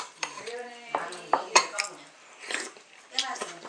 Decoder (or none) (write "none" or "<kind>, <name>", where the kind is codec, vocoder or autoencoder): vocoder, BigVGAN v2